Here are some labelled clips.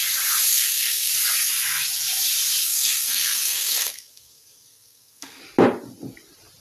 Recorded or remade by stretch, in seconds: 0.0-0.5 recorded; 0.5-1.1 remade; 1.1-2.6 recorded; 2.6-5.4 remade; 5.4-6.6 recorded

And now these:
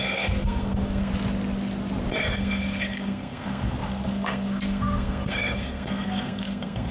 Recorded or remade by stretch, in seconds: 0.0-1.1 remade; 1.1-2.2 recorded; 2.2-6.9 remade

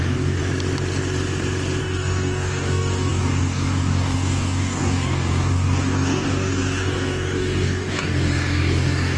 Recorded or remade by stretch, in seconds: 0.0-0.4 remade; 0.4-1.8 recorded; 1.8-9.2 remade

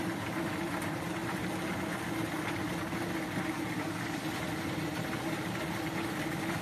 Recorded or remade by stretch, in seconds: 0.0-6.6 recorded

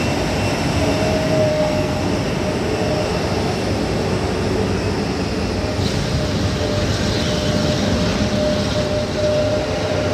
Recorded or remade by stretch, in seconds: 0.0-1.5 recorded; 1.5-2.0 remade; 2.0-10.1 recorded

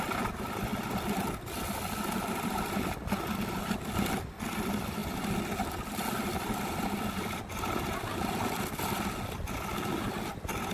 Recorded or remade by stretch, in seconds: 0.0-10.7 recorded